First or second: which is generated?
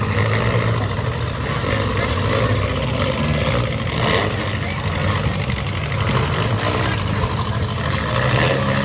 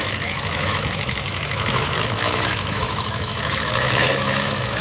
second